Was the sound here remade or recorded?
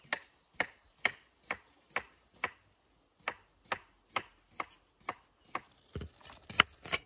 recorded